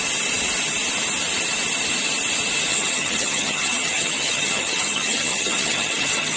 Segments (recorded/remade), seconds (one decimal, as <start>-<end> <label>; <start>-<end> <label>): 0.0-2.7 recorded; 2.7-6.4 remade